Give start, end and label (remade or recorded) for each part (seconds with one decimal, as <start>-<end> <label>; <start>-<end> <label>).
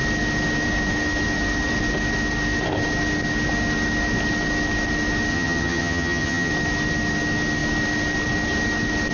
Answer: 0.0-5.3 recorded; 5.3-6.5 remade; 6.5-9.1 recorded